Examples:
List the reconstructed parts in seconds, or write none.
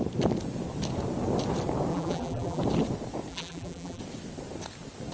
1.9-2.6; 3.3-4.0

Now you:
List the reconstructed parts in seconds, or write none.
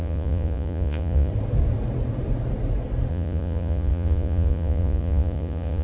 0.0-1.3; 3.1-5.8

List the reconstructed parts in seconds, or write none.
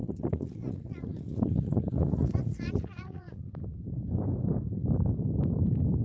0.0-3.5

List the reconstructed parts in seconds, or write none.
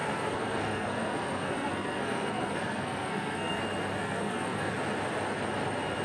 0.0-3.6; 4.0-4.7